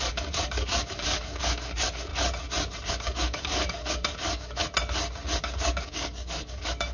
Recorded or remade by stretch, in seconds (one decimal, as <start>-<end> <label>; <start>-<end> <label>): 0.0-2.1 remade; 2.1-2.9 recorded; 2.9-4.6 remade; 4.6-5.4 recorded; 5.4-6.9 remade